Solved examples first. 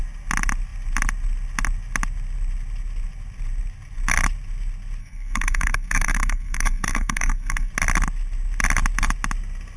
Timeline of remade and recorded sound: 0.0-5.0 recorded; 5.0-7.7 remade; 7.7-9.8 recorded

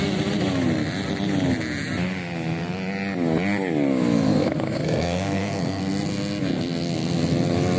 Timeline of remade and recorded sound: 0.0-4.3 recorded; 4.3-5.8 remade; 5.8-7.8 recorded

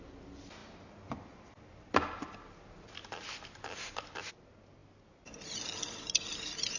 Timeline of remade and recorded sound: 0.0-6.8 recorded

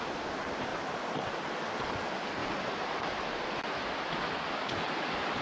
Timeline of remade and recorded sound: 0.0-5.4 recorded

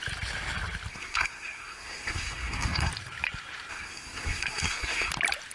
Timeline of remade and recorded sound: 0.0-0.9 recorded; 0.9-2.9 remade; 2.9-3.7 recorded; 3.7-5.1 remade; 5.1-5.5 recorded

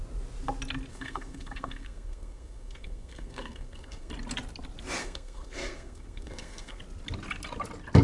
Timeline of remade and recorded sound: 0.0-0.9 recorded; 0.9-4.1 remade; 4.1-5.0 recorded; 5.0-6.8 remade; 6.8-8.0 recorded